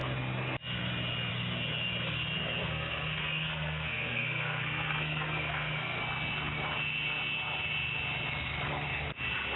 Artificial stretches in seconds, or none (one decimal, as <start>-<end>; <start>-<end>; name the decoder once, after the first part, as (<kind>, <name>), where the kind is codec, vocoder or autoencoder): 2.6-6.0 (codec, SNAC)